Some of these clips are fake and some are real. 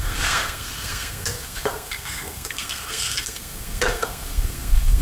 fake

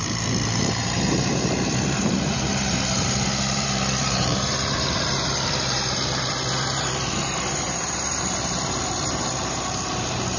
fake